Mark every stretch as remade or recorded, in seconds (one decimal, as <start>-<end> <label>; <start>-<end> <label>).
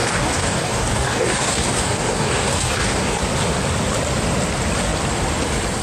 0.0-3.2 remade; 3.2-5.8 recorded